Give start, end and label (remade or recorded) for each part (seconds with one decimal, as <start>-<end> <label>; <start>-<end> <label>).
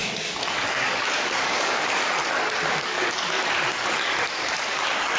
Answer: 0.0-2.2 remade; 2.2-2.7 recorded; 2.7-5.2 remade